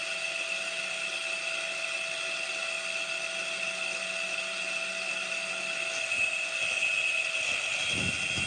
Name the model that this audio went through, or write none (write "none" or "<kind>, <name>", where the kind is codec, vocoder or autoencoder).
none